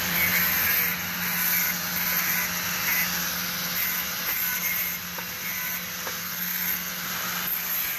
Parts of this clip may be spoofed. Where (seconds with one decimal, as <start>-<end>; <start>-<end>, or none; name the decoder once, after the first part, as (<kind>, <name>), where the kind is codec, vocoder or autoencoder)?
6.2-6.9 (codec, SNAC)

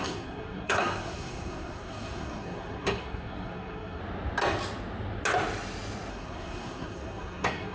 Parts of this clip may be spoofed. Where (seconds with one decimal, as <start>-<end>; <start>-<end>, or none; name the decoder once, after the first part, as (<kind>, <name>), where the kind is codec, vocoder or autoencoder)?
0.0-4.0 (codec, SNAC); 6.1-7.7

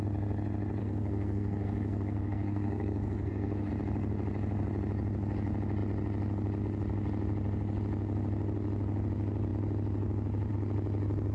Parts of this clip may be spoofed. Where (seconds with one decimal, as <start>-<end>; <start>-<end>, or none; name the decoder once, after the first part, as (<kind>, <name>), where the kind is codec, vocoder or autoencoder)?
0.8-3.7 (codec, SNAC)